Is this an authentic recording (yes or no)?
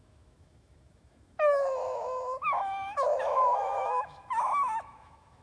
no